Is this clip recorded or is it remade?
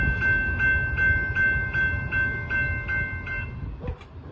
recorded